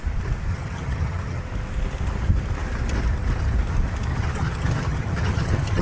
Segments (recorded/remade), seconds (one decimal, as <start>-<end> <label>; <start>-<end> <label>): 0.0-0.5 recorded; 0.5-1.4 remade; 1.4-4.1 recorded; 4.1-5.8 remade